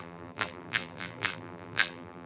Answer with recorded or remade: remade